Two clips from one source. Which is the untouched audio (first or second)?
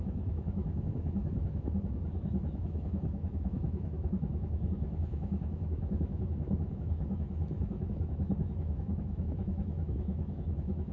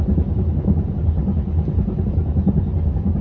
second